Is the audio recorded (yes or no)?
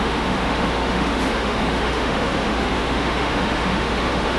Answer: no